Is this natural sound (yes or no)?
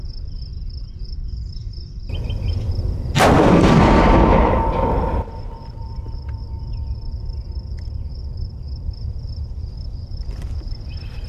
no